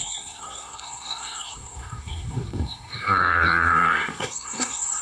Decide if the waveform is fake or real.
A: fake